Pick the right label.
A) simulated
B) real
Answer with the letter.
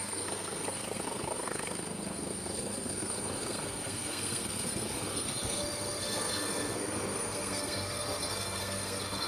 A